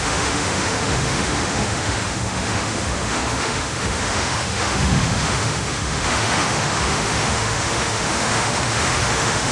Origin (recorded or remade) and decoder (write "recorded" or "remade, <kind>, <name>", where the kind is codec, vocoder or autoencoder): remade, autoencoder, DAC-VAE